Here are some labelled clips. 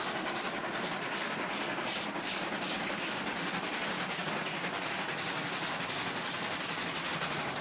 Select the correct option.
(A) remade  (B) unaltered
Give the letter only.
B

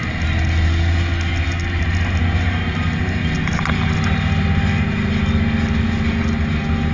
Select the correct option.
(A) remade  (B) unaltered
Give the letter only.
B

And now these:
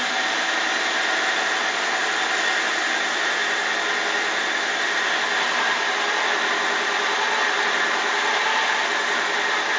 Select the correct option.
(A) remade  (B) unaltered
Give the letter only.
B